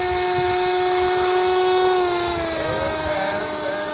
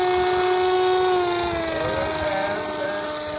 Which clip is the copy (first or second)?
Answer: first